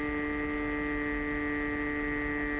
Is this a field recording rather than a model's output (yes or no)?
yes